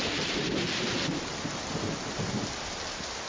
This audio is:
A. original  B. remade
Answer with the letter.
A